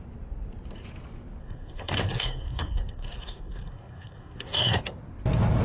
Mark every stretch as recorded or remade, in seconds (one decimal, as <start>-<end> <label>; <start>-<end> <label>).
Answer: 0.0-1.4 recorded; 1.4-4.8 remade; 4.8-5.6 recorded